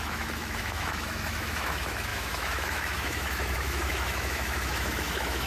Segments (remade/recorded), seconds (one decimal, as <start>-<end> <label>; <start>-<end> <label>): 0.0-5.5 remade